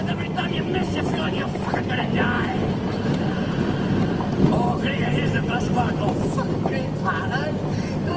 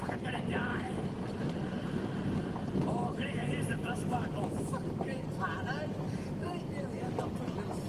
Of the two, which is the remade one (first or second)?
second